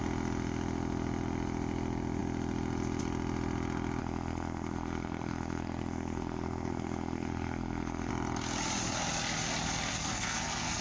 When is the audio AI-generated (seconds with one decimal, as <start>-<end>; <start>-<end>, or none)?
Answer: 4.0-8.1; 9.9-10.8